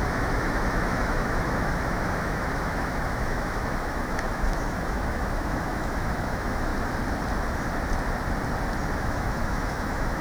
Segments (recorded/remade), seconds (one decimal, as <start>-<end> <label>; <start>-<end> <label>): 0.0-6.7 remade; 6.7-9.0 recorded; 9.0-10.2 remade